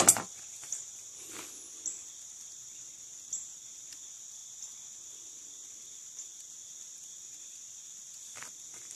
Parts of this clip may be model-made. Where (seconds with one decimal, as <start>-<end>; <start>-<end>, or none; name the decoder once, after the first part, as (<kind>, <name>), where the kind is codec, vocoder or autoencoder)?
none